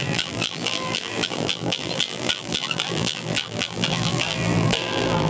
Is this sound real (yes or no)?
no